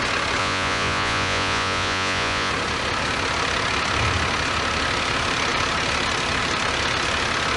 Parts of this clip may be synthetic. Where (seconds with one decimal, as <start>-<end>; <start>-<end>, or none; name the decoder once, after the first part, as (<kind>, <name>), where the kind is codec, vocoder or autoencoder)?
0.4-2.5 (vocoder, Vocos)